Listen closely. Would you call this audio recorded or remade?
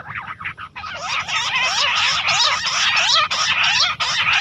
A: recorded